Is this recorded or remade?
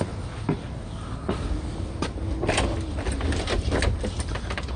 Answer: recorded